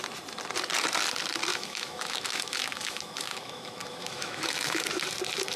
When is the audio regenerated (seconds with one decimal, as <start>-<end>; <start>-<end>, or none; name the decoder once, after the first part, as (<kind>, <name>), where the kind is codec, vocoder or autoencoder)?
1.5-4.9 (autoencoder, DAC-VAE)